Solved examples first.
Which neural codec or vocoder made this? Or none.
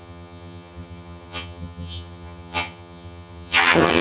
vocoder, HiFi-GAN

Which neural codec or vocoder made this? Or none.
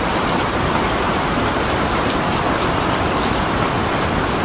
vocoder, BigVGAN v2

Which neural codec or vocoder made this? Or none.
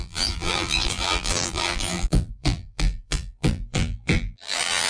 vocoder, BigVGAN v2